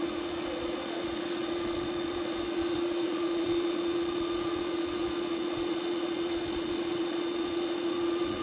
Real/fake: fake